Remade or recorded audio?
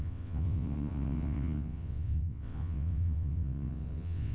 remade